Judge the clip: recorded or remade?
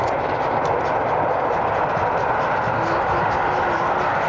recorded